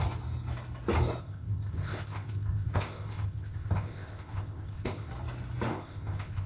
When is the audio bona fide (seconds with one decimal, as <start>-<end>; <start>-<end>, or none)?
0.0-1.2; 5.1-5.7

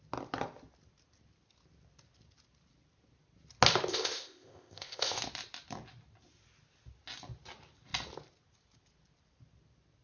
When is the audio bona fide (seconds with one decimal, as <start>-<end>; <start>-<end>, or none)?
0.0-3.9; 5.2-10.0

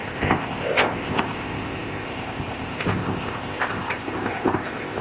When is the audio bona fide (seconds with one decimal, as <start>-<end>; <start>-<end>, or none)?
none